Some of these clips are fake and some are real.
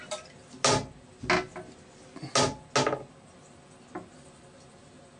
real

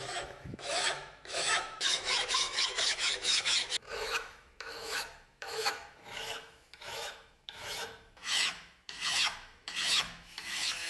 fake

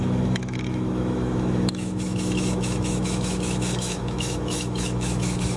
fake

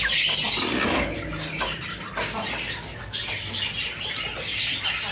real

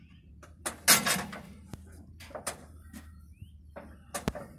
real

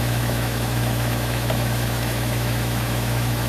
fake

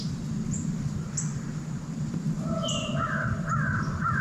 real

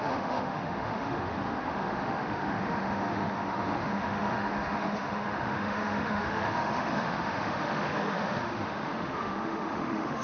fake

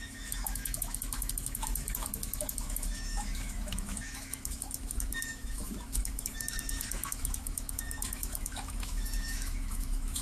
fake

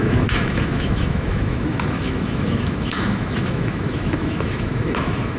fake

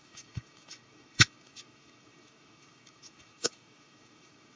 fake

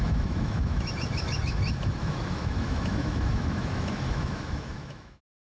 fake